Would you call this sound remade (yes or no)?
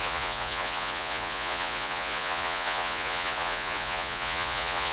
yes